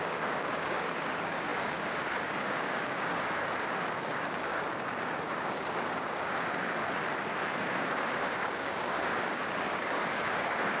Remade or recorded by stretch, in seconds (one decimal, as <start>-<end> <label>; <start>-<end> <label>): 0.0-6.8 remade; 6.8-7.6 recorded; 7.6-10.8 remade